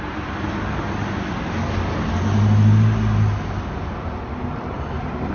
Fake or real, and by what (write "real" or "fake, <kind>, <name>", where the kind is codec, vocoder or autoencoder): real